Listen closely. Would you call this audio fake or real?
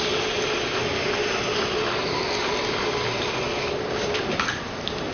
real